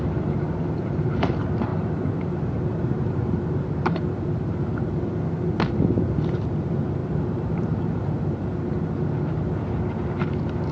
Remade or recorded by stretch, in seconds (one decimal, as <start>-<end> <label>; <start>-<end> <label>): 0.0-1.7 recorded; 1.7-5.0 remade; 5.0-7.0 recorded; 7.0-8.5 remade; 8.5-10.7 recorded